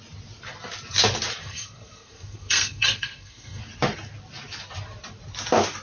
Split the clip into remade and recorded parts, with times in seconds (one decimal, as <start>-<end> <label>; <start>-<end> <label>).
0.0-1.4 recorded; 1.4-3.6 remade; 3.6-5.8 recorded

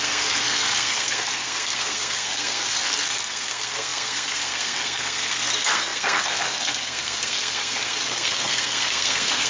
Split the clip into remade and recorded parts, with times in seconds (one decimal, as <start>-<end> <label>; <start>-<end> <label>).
0.0-9.5 remade

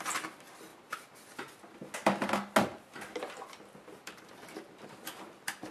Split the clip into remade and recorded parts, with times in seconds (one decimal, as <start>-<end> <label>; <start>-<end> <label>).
0.0-5.7 recorded

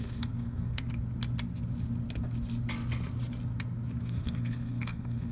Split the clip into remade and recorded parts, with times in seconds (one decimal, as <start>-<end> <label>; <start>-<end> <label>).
0.0-0.8 remade; 0.8-4.0 recorded; 4.0-5.3 remade